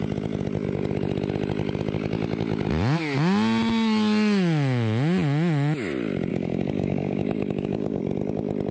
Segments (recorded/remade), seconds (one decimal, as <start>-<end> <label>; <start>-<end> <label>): 0.0-6.3 recorded; 6.3-8.0 remade; 8.0-8.7 recorded